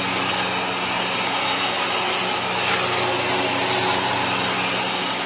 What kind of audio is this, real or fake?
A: real